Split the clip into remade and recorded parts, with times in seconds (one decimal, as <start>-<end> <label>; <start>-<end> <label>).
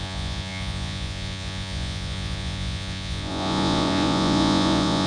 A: 0.0-5.1 remade